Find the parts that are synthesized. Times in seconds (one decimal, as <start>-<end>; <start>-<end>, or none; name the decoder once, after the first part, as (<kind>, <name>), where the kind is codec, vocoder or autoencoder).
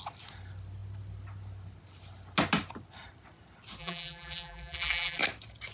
3.8-5.2 (vocoder, BigVGAN v2)